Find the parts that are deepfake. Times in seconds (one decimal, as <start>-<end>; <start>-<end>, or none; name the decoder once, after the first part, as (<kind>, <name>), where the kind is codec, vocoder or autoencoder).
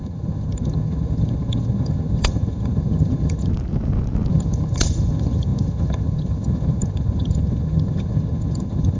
0.0-3.5 (vocoder, HiFi-GAN); 4.3-9.0